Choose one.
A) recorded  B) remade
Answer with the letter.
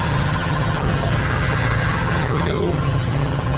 B